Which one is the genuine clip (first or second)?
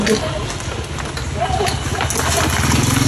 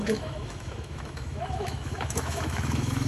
first